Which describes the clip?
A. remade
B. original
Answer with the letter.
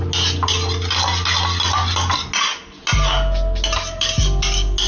B